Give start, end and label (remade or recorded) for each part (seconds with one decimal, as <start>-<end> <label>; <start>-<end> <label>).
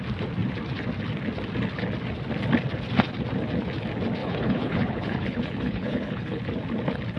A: 0.0-4.2 recorded; 4.2-6.4 remade; 6.4-7.2 recorded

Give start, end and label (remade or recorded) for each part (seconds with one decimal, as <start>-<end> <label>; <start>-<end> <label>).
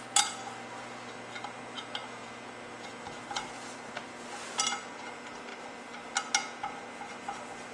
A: 0.0-7.7 recorded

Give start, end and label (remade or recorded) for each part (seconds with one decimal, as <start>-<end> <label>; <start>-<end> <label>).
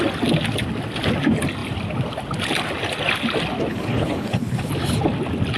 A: 0.0-3.7 recorded; 3.7-4.7 remade; 4.7-5.6 recorded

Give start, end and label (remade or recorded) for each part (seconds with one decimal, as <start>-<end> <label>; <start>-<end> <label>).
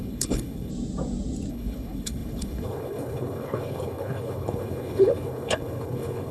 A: 0.0-0.7 remade; 0.7-1.5 recorded; 1.5-6.3 remade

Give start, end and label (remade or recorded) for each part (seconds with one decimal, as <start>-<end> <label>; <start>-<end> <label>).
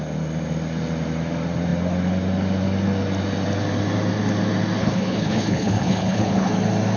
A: 0.0-4.8 recorded; 4.8-6.5 remade; 6.5-7.0 recorded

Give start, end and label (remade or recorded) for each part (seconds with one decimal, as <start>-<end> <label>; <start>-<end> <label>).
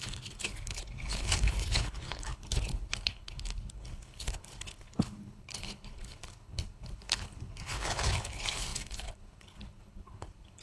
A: 0.0-10.6 remade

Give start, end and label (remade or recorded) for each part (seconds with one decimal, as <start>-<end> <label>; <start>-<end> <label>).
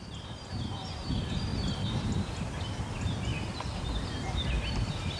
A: 0.0-5.2 recorded